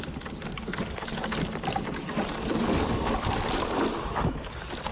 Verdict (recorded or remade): recorded